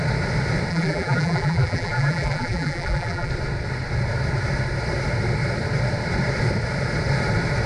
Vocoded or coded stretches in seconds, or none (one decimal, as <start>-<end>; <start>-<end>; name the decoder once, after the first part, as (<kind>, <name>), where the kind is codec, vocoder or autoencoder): 0.7-3.3 (vocoder, BigVGAN v2)

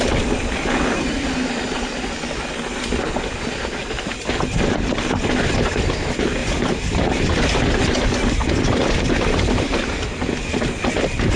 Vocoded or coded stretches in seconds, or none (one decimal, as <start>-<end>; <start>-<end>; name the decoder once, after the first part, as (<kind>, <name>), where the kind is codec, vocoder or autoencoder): 6.4-7.3 (vocoder, BigVGAN v2)

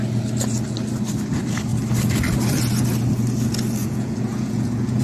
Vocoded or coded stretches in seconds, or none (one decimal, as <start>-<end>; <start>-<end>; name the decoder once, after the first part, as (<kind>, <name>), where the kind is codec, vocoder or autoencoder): 3.8-5.0 (vocoder, Vocos)

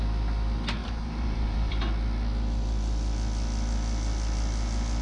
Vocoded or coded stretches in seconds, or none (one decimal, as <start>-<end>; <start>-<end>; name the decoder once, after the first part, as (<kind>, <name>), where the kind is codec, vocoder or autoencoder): 0.8-1.8 (vocoder, BigVGAN v2)

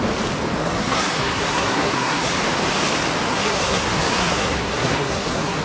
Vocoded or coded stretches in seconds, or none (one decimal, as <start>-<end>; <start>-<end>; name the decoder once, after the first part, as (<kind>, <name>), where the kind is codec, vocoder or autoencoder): 0.6-2.3 (codec, SNAC); 3.3-5.6

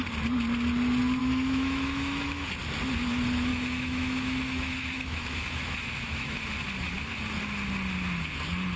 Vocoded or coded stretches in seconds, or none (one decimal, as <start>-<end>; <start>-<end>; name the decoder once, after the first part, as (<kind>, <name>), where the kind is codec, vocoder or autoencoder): 1.2-2.5 (autoencoder, DAC-VAE); 3.5-6.4

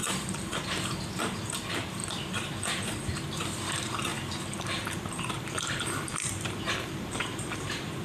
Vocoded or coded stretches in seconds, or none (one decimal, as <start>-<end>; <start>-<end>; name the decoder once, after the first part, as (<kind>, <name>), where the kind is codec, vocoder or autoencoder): 0.0-2.0 (vocoder, BigVGAN v2); 2.6-8.0

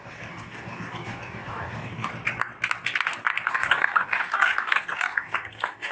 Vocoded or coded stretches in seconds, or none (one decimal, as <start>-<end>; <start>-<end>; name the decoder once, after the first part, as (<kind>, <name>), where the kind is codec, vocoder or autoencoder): 0.0-2.1 (codec, DAC); 3.5-5.9